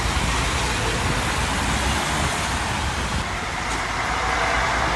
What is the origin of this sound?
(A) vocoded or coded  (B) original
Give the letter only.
B